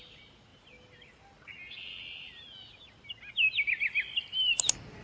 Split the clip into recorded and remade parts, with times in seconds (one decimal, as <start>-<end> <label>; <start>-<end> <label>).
0.0-5.0 recorded